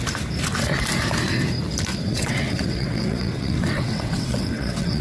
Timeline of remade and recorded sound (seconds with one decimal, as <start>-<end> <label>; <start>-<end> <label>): 0.0-1.9 recorded; 1.9-5.0 remade